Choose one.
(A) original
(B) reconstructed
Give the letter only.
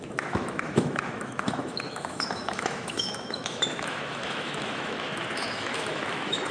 B